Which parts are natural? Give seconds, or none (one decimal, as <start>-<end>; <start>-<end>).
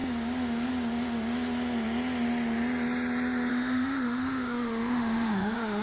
0.0-3.5